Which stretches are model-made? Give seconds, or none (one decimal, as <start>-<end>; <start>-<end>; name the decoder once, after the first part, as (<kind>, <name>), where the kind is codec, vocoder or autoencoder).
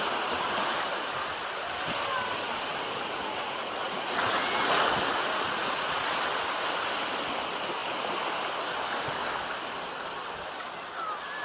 2.7-6.1 (vocoder, Vocos)